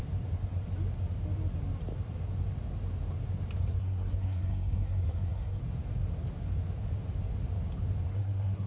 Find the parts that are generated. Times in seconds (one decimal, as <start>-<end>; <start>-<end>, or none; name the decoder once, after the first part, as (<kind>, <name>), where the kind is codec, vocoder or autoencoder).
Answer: 3.8-5.6 (codec, SNAC); 8.1-8.7

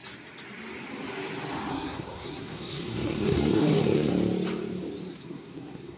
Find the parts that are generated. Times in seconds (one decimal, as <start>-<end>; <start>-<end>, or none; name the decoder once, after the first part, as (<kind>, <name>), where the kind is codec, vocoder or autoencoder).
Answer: 1.7-4.1 (codec, SNAC); 5.1-6.0

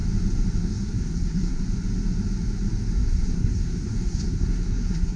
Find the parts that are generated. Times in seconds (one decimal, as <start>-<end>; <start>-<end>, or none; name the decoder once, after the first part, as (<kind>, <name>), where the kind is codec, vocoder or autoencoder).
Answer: 0.6-1.6 (codec, SNAC); 3.1-5.2

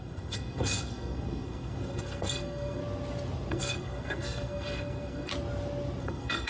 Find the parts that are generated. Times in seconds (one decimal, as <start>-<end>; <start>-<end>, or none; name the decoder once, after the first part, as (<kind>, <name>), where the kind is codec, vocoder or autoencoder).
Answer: 0.0-2.8 (codec, SNAC); 3.5-5.3; 6.0-6.5